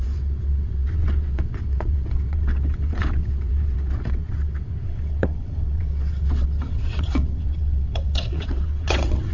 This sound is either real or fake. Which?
fake